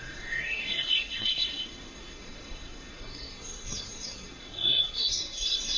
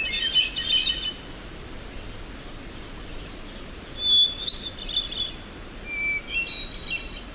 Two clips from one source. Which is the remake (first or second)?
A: first